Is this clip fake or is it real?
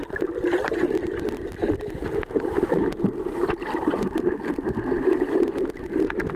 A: real